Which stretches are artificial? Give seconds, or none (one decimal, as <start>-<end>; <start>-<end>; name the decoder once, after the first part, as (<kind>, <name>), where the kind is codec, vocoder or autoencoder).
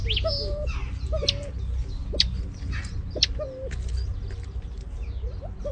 none